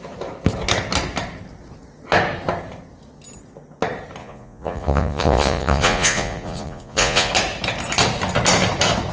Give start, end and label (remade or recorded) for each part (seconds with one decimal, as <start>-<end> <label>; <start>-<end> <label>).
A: 0.0-4.2 recorded; 4.2-7.3 remade; 7.3-9.1 recorded